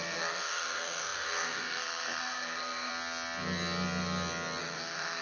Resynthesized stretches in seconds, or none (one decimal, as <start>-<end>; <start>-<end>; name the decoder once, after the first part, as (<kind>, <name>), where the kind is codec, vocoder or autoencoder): 0.0-2.9 (codec, SNAC); 4.6-5.2